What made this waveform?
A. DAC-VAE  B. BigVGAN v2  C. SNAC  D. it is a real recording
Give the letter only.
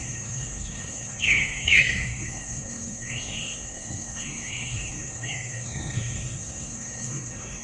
C